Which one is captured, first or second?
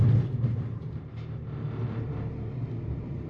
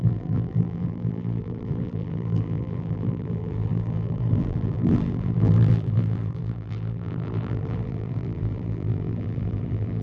first